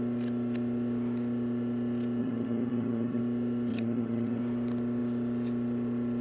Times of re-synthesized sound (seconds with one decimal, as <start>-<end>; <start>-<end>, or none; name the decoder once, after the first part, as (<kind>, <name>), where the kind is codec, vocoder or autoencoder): 2.2-3.2 (vocoder, HiFi-GAN); 3.7-4.4